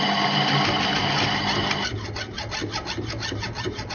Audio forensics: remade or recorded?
recorded